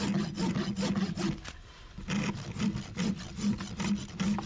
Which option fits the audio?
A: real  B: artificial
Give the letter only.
A